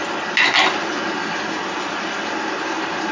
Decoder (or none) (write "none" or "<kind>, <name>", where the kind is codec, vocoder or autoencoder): none